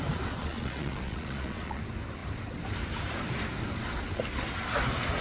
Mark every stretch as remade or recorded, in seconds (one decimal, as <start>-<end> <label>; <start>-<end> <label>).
0.0-0.4 recorded; 0.4-1.8 remade; 1.8-5.2 recorded